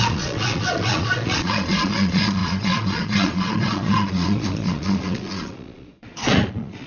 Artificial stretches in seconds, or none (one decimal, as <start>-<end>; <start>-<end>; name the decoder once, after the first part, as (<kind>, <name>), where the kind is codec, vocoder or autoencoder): 0.0-6.9 (vocoder, Vocos)